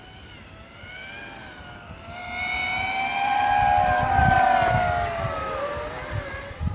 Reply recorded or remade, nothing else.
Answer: recorded